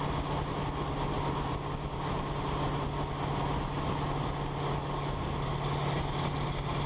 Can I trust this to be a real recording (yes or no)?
yes